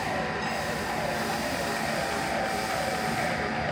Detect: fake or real real